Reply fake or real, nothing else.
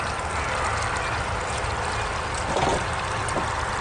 real